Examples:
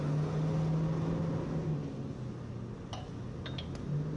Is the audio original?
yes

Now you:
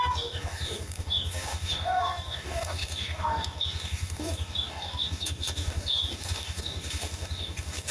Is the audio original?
no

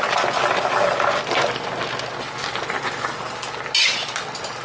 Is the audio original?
yes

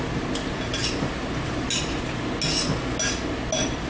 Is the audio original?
yes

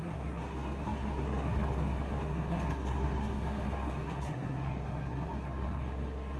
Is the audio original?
no